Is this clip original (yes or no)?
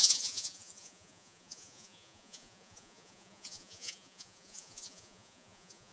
no